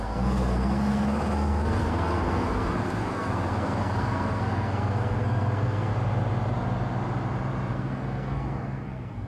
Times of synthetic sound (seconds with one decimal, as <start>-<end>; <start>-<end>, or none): 0.0-5.9; 7.7-9.3

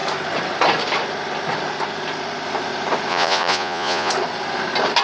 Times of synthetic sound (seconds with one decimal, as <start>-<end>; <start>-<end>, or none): 3.1-4.1